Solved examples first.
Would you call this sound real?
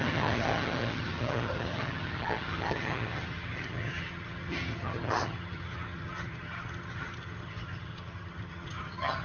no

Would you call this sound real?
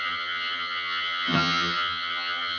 no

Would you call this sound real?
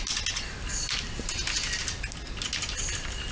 yes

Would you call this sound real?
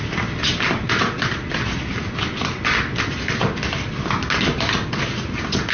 yes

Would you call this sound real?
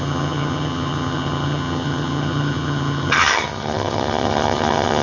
no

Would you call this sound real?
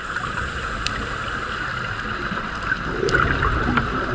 yes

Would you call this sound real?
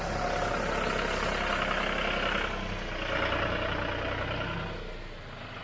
yes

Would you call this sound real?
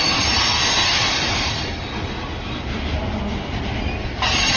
yes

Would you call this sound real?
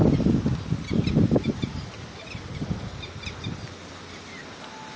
yes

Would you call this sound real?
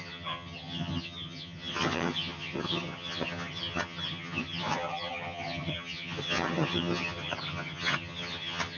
no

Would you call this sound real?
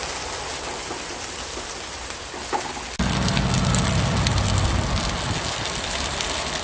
yes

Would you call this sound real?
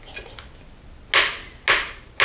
yes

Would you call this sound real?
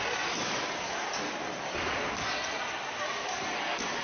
yes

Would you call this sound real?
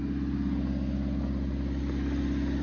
yes